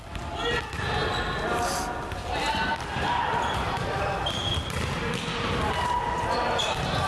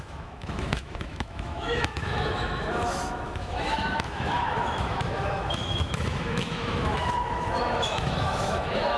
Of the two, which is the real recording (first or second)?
first